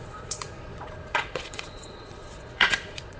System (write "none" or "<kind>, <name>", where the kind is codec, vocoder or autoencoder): vocoder, Vocos